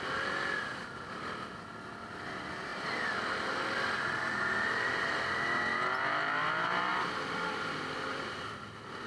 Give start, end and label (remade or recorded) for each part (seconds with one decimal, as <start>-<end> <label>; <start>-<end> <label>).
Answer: 0.0-2.7 recorded; 2.7-4.3 remade; 4.3-6.9 recorded; 6.9-7.8 remade; 7.8-9.1 recorded